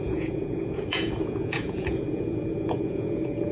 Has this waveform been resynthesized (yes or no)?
yes